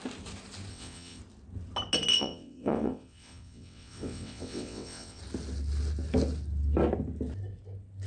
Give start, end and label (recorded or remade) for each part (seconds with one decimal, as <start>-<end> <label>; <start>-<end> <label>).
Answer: 0.0-0.7 recorded; 0.7-1.2 remade; 1.2-2.1 recorded; 2.1-5.2 remade; 5.2-8.1 recorded